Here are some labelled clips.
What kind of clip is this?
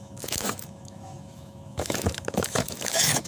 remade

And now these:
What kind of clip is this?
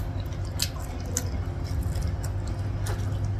recorded